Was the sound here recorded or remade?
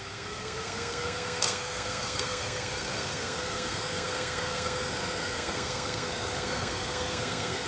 remade